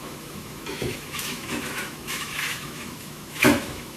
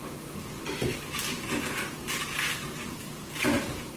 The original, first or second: second